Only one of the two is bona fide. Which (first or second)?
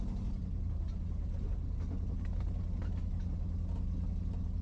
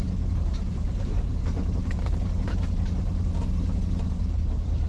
first